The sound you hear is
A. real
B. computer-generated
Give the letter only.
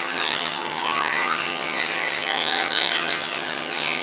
B